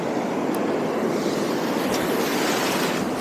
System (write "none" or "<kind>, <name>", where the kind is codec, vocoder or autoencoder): none